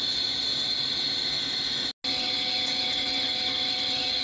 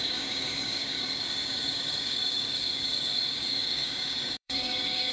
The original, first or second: first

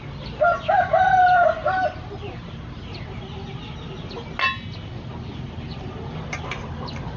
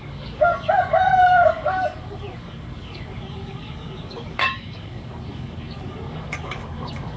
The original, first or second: first